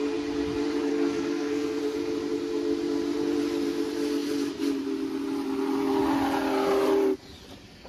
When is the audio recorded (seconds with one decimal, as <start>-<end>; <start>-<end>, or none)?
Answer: 0.0-0.9; 1.8-7.9